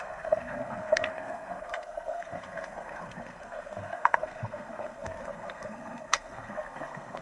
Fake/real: fake